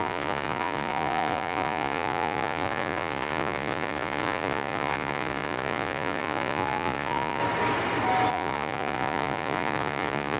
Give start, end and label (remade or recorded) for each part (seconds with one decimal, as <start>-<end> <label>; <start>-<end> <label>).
0.0-7.4 remade; 7.4-8.3 recorded; 8.3-10.4 remade